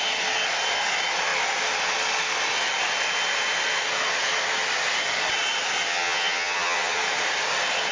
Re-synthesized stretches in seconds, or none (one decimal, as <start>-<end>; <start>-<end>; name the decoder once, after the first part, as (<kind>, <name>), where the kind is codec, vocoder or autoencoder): 5.9-7.0 (vocoder, HiFi-GAN)